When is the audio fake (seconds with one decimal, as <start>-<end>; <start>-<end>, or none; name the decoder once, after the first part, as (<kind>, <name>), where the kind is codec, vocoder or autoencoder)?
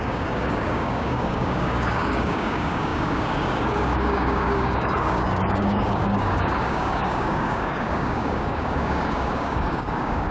0.0-10.3 (codec, DAC)